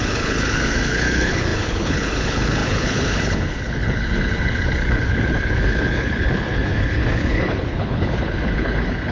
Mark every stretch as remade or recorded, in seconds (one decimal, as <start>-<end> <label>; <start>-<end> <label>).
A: 0.0-9.1 remade